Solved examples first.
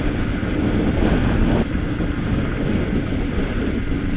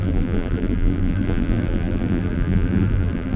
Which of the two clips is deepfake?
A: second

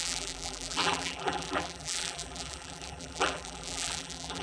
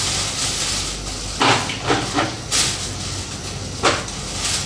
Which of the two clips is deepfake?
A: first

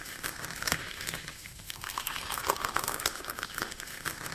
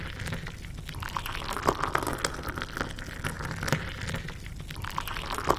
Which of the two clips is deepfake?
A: first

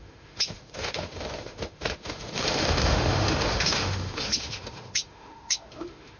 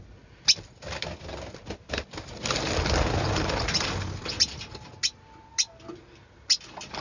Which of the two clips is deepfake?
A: first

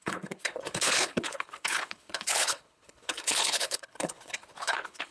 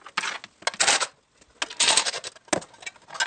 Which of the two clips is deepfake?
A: first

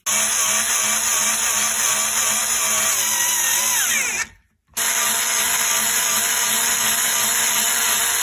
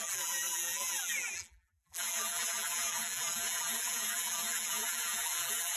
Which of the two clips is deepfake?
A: second